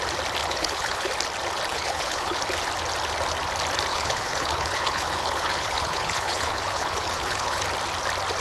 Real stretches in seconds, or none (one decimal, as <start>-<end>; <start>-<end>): 0.0-0.4; 1.1-1.7; 2.4-3.9; 7.6-8.4